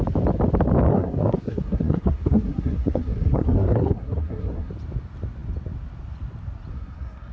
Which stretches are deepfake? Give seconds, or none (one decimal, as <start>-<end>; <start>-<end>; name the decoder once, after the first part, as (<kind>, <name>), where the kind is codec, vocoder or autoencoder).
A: 0.9-4.7 (codec, SNAC); 6.7-7.3